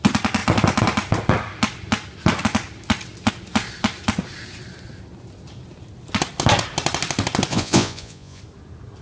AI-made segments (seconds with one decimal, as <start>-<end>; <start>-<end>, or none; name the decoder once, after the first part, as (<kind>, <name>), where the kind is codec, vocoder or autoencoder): 7.5-8.4 (vocoder, Vocos)